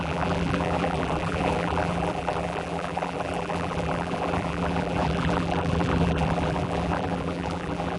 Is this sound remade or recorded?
remade